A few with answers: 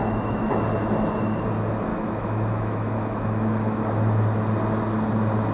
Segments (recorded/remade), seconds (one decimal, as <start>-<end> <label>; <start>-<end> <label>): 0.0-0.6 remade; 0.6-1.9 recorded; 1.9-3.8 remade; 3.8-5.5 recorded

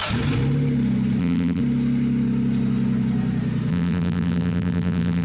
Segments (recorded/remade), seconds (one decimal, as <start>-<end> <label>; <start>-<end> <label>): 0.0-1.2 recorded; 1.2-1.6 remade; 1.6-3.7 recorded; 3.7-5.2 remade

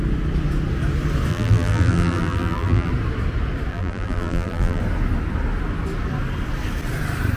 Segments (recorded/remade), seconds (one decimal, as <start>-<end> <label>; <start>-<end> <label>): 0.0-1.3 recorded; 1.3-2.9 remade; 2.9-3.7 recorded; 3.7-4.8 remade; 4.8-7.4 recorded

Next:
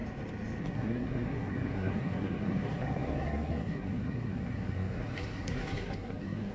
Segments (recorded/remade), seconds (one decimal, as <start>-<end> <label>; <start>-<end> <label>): 0.0-0.6 recorded; 0.6-6.5 remade